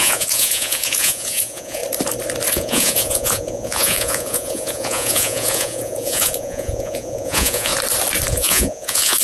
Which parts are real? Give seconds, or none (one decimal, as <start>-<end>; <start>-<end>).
1.8-2.5; 7.7-8.3